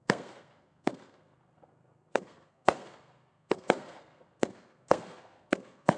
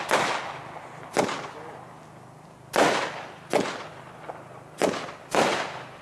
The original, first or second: second